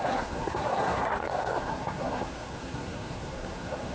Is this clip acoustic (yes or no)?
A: no